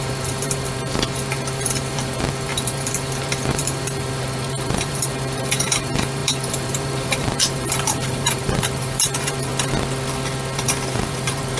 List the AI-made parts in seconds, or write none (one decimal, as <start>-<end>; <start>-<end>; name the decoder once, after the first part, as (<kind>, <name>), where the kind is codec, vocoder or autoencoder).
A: 0.0-9.5 (vocoder, BigVGAN v2); 10.5-11.6